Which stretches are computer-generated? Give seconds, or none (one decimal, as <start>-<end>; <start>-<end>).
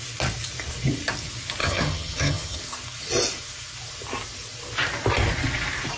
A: 1.6-2.6